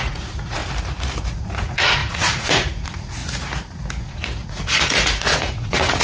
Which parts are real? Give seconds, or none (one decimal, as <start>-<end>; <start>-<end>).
0.6-1.2; 3.2-4.0